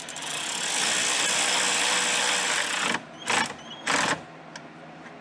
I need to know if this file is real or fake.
real